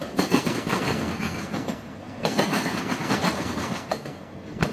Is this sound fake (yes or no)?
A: yes